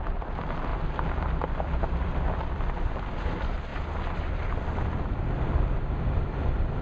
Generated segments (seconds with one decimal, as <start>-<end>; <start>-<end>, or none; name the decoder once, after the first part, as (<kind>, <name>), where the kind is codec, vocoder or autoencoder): 0.7-3.1 (vocoder, BigVGAN v2)

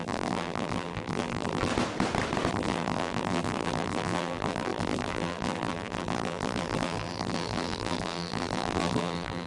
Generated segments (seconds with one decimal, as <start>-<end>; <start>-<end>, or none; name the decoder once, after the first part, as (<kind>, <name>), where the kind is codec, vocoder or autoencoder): 0.0-1.7 (vocoder, BigVGAN v2); 2.5-9.5

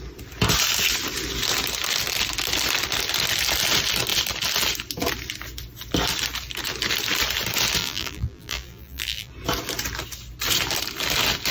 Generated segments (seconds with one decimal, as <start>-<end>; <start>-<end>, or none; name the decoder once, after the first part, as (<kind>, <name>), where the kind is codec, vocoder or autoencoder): 7.8-9.3 (vocoder, BigVGAN v2)

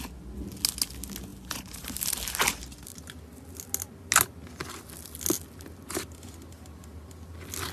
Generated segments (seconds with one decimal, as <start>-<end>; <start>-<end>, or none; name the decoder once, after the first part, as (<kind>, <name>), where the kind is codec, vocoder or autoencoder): 1.3-2.3 (vocoder, BigVGAN v2)

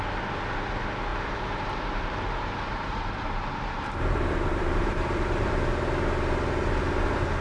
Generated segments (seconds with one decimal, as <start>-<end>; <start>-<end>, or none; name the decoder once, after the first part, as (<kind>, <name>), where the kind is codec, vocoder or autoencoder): 1.1-5.5 (vocoder, BigVGAN v2)

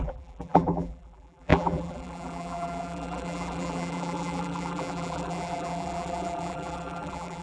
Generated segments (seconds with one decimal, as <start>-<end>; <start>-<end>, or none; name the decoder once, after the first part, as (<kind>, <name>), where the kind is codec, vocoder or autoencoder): 0.0-7.4 (vocoder, BigVGAN v2)

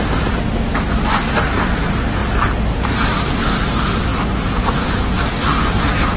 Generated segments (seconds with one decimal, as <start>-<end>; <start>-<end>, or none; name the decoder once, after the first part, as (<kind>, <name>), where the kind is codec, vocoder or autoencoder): 0.0-2.2 (vocoder, BigVGAN v2); 2.7-6.2